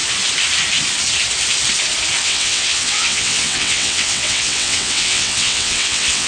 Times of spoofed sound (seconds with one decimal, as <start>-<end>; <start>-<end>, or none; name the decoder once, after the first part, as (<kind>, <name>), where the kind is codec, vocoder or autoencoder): 2.2-6.3 (vocoder, WaveNeXt)